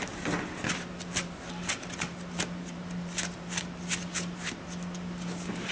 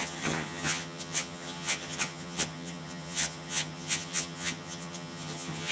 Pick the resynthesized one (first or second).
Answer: second